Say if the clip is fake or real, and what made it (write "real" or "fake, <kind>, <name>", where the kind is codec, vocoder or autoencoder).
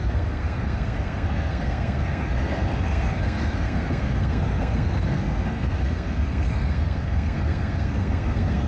fake, codec, SNAC